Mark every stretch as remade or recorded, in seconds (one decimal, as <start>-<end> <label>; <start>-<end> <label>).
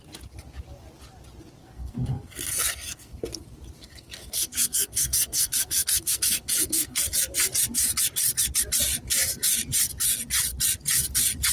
0.0-1.6 recorded; 1.6-3.4 remade; 3.4-3.8 recorded; 3.8-7.1 remade; 7.1-11.5 recorded